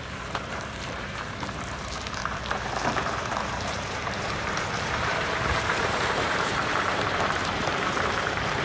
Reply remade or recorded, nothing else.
remade